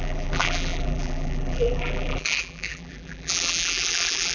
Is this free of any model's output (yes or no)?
no